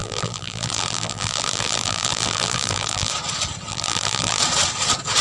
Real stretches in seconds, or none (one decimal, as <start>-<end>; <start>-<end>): 3.1-3.7; 4.4-5.2